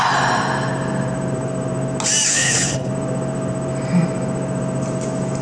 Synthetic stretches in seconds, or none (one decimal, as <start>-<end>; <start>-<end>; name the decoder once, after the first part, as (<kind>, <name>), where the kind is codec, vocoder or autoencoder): 2.3-2.9 (codec, HILCodec)